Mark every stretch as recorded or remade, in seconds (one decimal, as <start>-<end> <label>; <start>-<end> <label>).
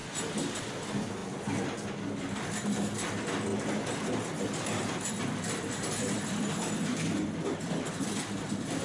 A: 0.0-0.6 recorded; 0.6-1.2 remade; 1.2-2.2 recorded; 2.2-8.8 remade